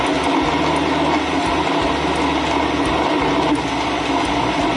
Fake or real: real